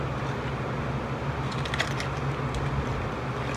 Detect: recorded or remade recorded